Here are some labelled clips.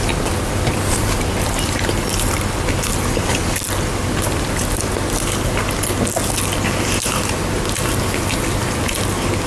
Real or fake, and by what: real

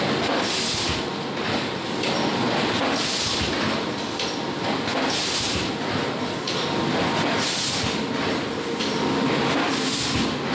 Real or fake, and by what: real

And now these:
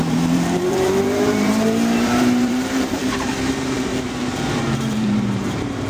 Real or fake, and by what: fake, vocoder, BigVGAN v2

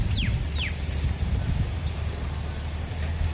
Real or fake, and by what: fake, vocoder, BigVGAN v2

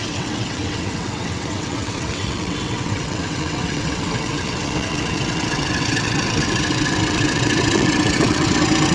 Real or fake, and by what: fake, vocoder, WaveNeXt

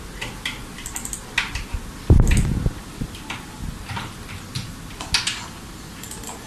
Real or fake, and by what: real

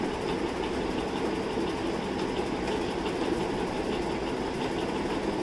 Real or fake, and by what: real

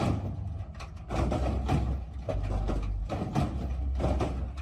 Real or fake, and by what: real